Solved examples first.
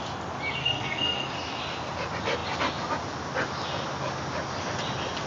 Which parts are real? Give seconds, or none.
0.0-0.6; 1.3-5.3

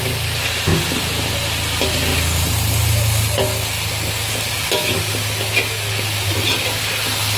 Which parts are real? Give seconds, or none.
0.0-0.7; 1.3-7.4

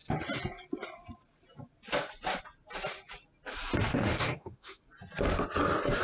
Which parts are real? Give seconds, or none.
0.0-3.9; 4.8-6.0